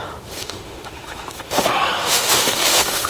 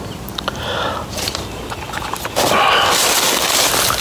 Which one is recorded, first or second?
second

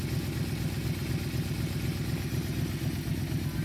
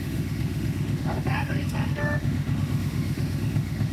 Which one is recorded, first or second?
first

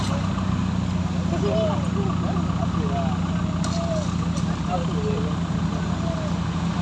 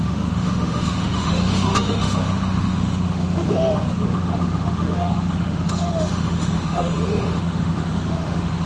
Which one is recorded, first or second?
first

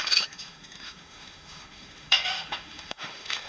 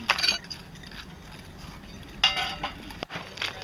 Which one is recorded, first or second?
second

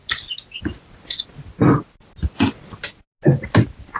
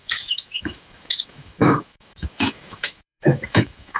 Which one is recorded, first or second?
first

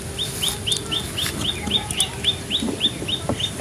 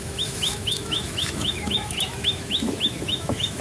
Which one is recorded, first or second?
first